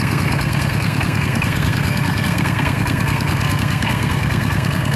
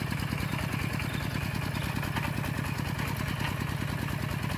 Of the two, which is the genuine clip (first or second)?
second